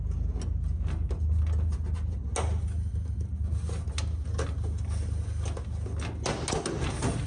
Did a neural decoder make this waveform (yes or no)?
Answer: no